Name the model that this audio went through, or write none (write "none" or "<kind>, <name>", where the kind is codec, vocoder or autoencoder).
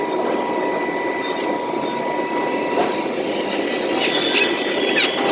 none